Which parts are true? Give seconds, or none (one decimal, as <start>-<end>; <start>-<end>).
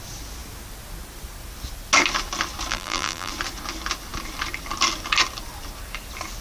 0.0-2.7; 3.3-6.4